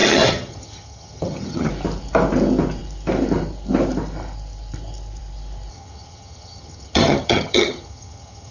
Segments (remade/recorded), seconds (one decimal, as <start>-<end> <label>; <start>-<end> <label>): 0.0-1.7 remade; 1.7-5.7 recorded; 5.7-8.5 remade